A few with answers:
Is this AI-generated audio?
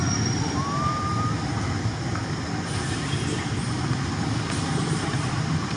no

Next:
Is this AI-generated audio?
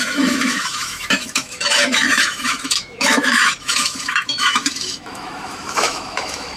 yes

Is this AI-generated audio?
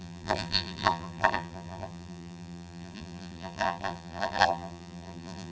yes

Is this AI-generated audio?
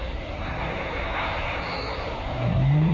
yes